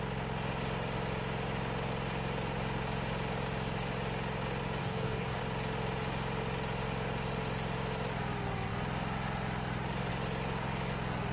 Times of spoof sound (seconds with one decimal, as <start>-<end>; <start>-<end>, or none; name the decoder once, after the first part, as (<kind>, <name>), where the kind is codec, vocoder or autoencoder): 4.8-5.4 (codec, DAC)